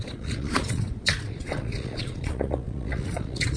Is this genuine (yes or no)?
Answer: no